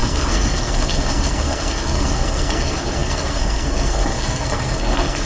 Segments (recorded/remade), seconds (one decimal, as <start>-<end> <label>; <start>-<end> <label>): 0.0-5.3 remade